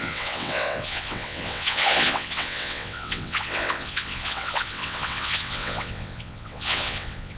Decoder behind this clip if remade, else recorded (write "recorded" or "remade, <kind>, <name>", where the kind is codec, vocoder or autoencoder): remade, vocoder, WaveNeXt